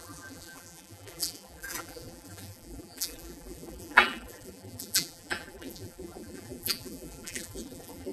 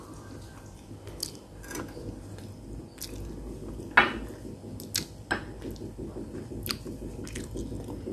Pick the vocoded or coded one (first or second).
first